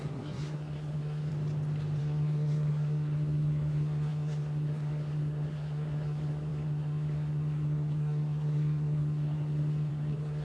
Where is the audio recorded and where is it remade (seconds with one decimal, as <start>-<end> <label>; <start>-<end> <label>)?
0.0-1.3 remade; 1.3-2.0 recorded; 2.0-10.4 remade